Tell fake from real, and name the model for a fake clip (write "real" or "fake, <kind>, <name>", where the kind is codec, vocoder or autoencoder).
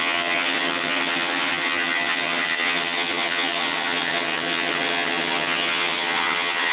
fake, vocoder, HiFi-GAN